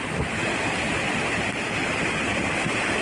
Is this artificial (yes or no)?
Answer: no